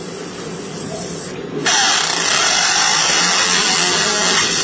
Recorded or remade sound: recorded